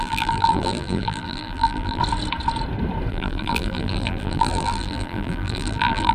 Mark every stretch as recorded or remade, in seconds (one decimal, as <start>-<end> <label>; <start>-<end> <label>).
0.0-2.0 remade; 2.0-3.1 recorded; 3.1-6.1 remade